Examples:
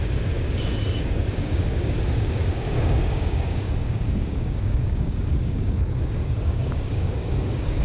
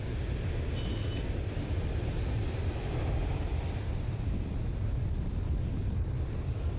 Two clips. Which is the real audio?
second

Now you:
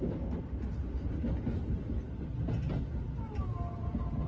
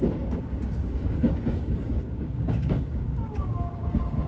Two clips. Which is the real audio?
first